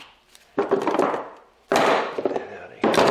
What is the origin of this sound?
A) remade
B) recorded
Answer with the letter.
B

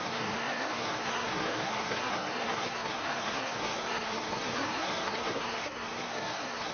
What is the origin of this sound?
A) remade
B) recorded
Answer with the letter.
A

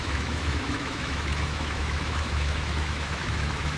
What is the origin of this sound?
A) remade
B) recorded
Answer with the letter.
A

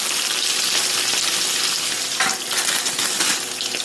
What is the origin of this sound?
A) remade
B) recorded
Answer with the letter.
B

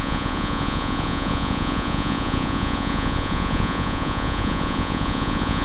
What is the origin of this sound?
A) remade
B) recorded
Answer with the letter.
A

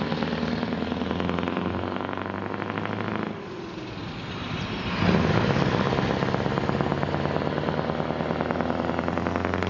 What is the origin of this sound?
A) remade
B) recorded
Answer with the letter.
B